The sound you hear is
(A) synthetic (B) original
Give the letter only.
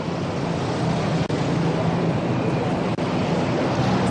B